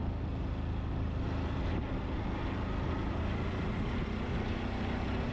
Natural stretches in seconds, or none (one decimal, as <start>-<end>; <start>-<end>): 0.0-5.3